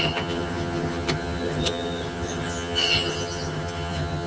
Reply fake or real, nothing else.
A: fake